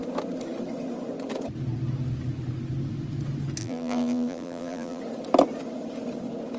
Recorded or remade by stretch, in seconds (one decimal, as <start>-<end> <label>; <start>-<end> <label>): 0.0-3.6 recorded; 3.6-5.0 remade; 5.0-6.6 recorded